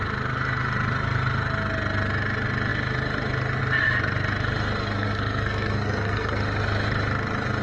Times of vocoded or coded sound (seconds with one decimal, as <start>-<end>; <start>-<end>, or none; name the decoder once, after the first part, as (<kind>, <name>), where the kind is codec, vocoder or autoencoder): 4.8-6.4 (codec, SNAC)